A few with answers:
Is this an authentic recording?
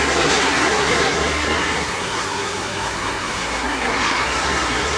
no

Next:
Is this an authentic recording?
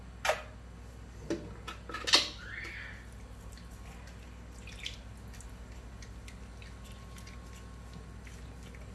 yes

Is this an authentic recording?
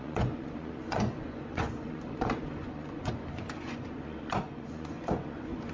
no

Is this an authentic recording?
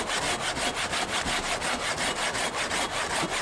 yes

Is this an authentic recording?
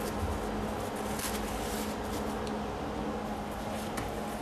yes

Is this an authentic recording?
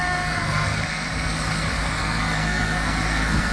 no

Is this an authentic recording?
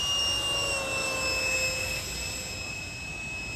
yes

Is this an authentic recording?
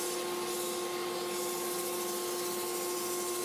yes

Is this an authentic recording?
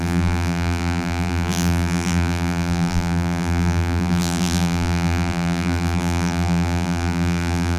no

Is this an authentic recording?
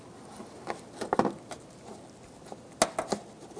yes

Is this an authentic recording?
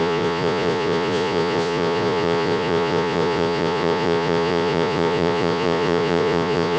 no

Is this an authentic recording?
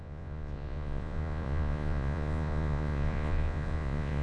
no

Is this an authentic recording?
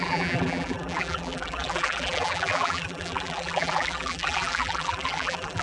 no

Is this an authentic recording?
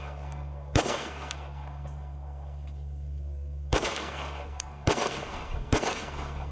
no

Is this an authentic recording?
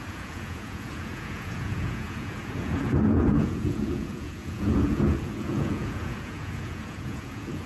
no